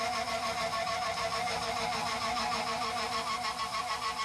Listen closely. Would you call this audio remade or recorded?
recorded